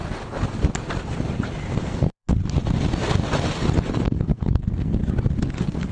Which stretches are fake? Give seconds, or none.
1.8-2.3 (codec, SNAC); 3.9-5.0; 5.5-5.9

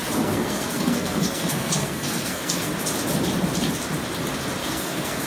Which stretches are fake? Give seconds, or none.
0.0-2.7 (codec, SNAC); 4.6-5.3